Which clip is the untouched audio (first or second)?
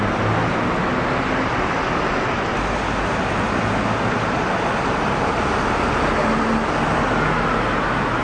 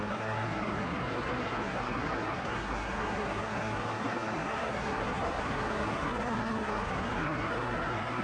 first